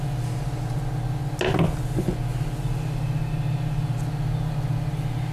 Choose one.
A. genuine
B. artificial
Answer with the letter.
A